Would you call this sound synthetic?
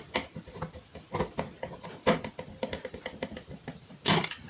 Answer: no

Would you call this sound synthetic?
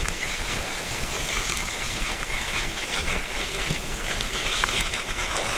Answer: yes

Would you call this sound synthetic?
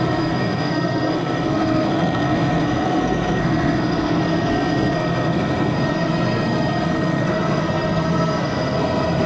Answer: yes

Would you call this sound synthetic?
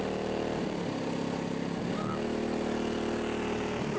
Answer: no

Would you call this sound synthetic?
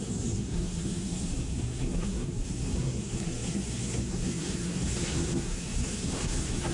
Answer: yes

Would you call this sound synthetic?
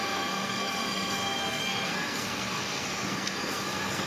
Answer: yes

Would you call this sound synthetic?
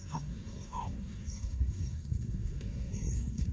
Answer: yes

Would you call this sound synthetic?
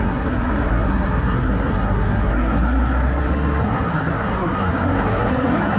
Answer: yes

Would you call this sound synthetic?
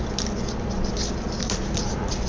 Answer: no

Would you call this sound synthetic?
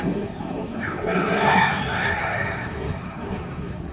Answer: yes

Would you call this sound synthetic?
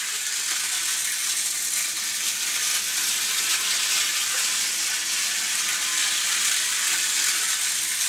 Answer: no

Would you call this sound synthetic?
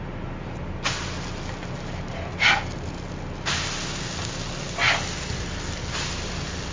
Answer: no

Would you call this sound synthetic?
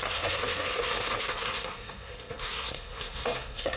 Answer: yes